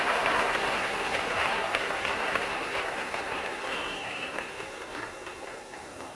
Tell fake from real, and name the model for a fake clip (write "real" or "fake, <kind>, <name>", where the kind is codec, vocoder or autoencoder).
fake, codec, SNAC